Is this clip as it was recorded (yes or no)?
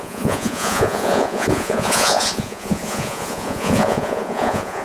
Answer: no